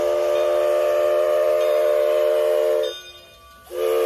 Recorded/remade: recorded